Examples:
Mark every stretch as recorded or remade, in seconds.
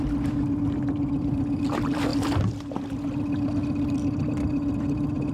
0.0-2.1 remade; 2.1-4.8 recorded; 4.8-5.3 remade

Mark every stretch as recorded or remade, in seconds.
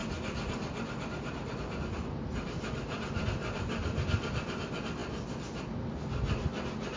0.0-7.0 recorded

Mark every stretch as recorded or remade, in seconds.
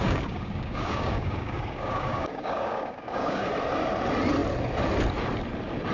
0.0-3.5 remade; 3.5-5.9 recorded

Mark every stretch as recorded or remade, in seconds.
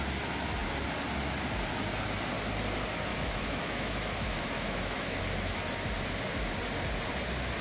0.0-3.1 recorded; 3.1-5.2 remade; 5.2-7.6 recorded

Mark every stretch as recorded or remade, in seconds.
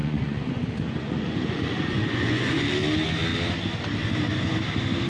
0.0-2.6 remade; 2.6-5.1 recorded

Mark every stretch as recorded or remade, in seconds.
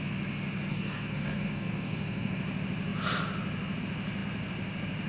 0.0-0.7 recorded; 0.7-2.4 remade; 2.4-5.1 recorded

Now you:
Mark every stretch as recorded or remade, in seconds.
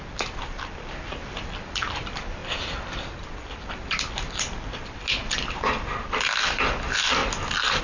0.0-7.8 recorded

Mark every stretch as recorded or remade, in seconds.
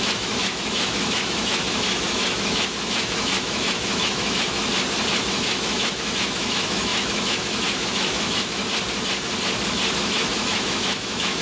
0.0-4.6 remade; 4.6-5.2 recorded; 5.2-8.6 remade; 8.6-10.0 recorded; 10.0-11.4 remade